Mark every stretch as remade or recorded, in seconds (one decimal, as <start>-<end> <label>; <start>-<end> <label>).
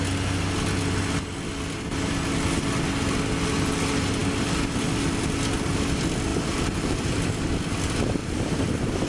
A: 0.0-6.3 recorded; 6.3-7.5 remade; 7.5-8.2 recorded; 8.2-9.1 remade